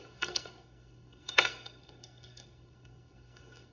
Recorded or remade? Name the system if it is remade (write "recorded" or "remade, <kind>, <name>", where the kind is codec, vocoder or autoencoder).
remade, codec, SNAC